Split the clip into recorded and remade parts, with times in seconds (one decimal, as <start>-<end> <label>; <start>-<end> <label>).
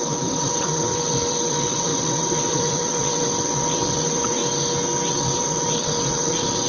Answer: 0.0-4.4 remade; 4.4-5.1 recorded; 5.1-6.7 remade